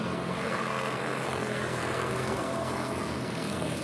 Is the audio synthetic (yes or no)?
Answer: yes